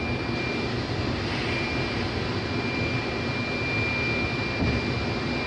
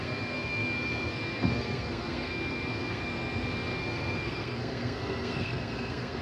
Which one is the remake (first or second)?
second